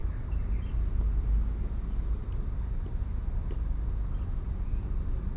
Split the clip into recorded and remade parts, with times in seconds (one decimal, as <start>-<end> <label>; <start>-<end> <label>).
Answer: 0.0-5.4 recorded

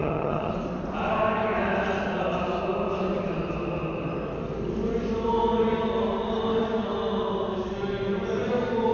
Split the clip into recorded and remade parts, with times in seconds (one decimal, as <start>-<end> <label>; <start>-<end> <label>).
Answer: 0.0-0.5 remade; 0.5-8.9 recorded